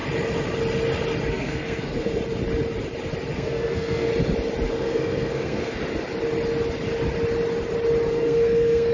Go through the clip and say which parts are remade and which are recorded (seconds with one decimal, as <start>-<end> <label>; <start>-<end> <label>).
0.0-1.3 recorded; 1.3-2.2 remade; 2.2-3.3 recorded; 3.3-4.1 remade; 4.1-4.7 recorded; 4.7-5.8 remade; 5.8-8.1 recorded; 8.1-8.9 remade